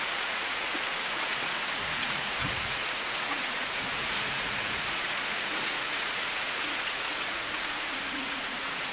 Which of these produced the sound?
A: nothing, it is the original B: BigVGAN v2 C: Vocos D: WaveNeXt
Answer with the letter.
C